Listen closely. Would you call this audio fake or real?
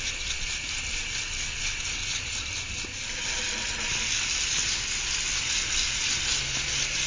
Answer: real